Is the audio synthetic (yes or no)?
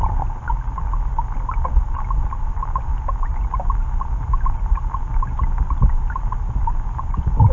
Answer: no